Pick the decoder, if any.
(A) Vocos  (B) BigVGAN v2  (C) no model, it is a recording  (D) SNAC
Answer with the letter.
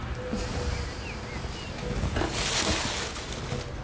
C